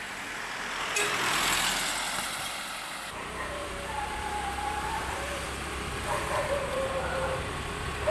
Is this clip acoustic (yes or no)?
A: no